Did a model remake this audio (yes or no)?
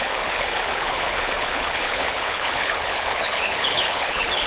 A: yes